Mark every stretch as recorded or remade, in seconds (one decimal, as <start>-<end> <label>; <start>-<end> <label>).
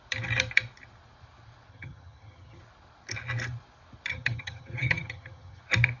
0.0-1.7 recorded; 1.7-2.6 remade; 2.6-4.1 recorded; 4.1-5.6 remade; 5.6-6.0 recorded